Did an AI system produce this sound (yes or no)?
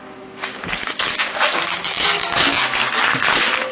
no